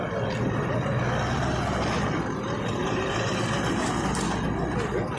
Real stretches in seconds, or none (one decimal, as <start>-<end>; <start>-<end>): 0.0-2.8; 3.4-5.2